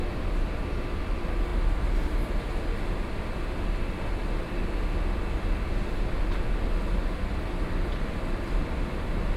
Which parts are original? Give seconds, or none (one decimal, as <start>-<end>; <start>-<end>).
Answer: 0.0-9.4